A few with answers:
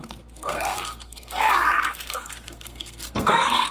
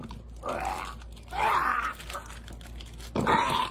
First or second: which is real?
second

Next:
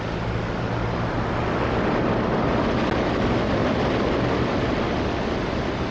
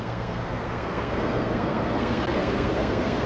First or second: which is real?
first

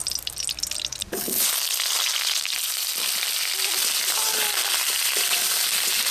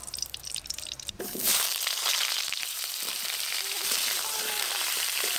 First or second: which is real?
first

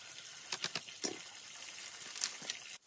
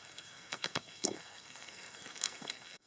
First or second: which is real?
first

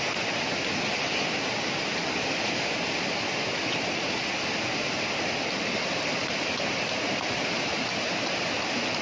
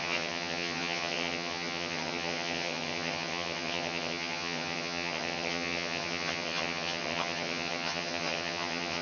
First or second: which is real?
first